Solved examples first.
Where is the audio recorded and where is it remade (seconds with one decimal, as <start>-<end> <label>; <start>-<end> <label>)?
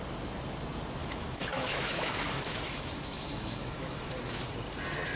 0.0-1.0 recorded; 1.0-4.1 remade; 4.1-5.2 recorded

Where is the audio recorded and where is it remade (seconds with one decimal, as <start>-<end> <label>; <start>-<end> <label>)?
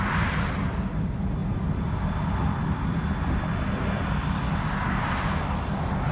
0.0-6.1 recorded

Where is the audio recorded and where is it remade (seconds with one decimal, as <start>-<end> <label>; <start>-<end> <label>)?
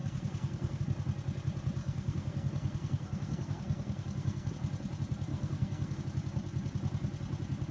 0.0-0.8 remade; 0.8-1.8 recorded; 1.8-4.5 remade; 4.5-5.3 recorded; 5.3-6.0 remade; 6.0-7.7 recorded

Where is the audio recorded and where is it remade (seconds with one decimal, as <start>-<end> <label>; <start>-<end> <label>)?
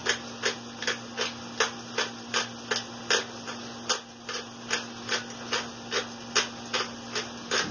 0.0-7.7 recorded